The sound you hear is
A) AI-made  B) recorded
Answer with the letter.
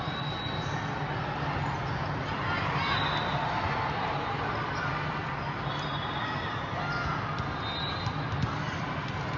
B